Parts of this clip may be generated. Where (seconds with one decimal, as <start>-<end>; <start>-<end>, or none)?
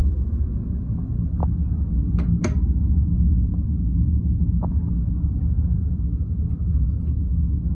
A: none